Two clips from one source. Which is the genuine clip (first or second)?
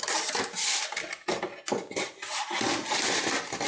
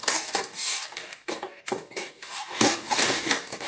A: first